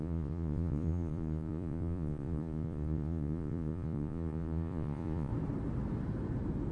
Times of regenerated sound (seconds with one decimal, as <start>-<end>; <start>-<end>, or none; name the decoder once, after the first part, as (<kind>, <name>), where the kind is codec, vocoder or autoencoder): 0.0-5.3 (vocoder, Vocos)